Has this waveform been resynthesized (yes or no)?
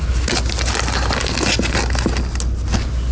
no